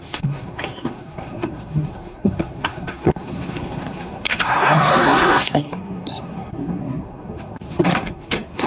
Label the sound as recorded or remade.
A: remade